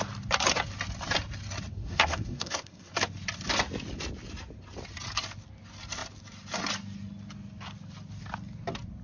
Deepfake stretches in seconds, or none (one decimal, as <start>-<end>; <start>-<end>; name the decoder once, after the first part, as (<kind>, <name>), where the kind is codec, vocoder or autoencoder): 1.7-2.9 (codec, SNAC)